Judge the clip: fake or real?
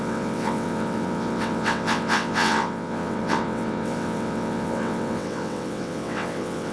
fake